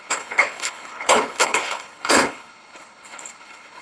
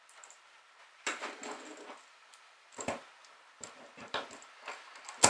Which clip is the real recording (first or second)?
second